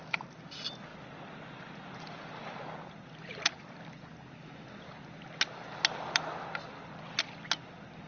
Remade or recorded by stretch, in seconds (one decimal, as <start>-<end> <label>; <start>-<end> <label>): 0.0-8.1 recorded